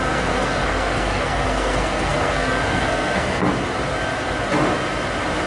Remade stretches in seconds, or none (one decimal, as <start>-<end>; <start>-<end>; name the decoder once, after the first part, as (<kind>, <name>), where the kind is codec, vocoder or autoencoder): 0.0-3.4 (codec, SNAC)